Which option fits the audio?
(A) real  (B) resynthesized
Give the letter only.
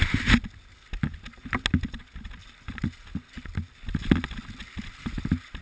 A